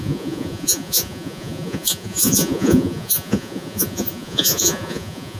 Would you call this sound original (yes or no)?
no